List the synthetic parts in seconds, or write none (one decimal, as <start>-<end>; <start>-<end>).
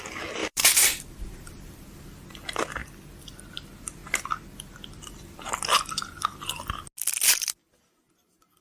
0.4-2.1